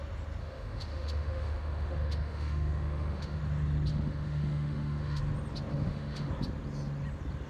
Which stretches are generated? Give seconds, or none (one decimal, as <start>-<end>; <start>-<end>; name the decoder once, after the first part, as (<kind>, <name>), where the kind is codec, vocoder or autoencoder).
0.4-3.4 (autoencoder, DAC-VAE); 3.9-5.2; 5.7-6.3